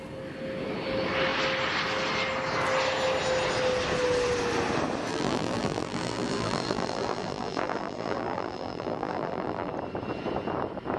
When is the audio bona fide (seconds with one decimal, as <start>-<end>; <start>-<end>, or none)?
0.0-5.1; 9.7-11.0